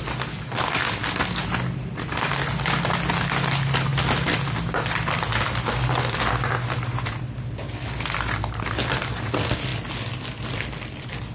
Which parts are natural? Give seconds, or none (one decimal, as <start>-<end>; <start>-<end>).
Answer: 0.0-11.3